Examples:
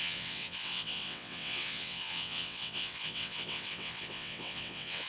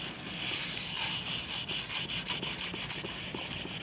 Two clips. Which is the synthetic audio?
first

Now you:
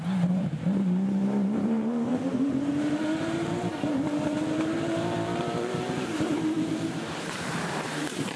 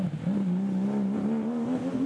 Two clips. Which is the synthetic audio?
first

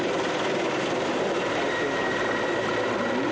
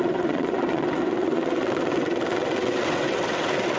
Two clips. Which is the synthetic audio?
second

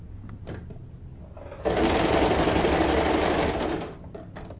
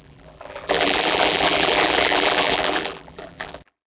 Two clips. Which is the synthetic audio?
second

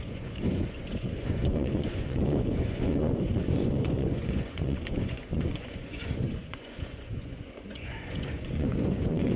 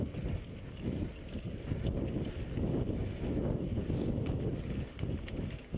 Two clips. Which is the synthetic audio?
first